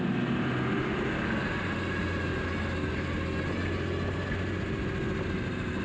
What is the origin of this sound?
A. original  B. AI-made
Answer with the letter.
A